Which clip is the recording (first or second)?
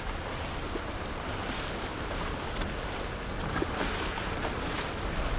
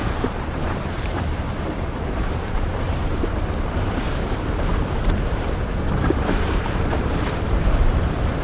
first